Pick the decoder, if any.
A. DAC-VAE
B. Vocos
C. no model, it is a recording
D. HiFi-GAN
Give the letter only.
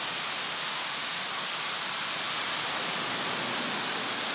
C